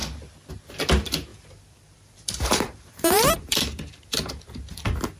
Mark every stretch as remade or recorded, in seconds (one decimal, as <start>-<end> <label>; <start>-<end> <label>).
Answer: 0.0-1.3 recorded; 1.3-4.4 remade; 4.4-5.2 recorded